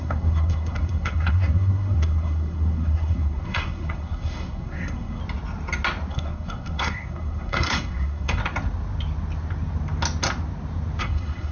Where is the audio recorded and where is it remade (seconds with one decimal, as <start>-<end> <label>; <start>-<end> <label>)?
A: 0.0-5.2 remade; 5.2-6.1 recorded; 6.1-8.4 remade; 8.4-11.0 recorded; 11.0-11.5 remade